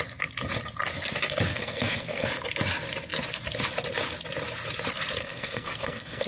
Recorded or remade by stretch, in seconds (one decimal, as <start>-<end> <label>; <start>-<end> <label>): 0.0-1.5 recorded; 1.5-2.3 remade; 2.3-5.2 recorded; 5.2-6.3 remade